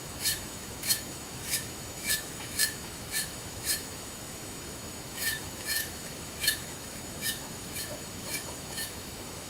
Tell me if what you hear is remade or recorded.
remade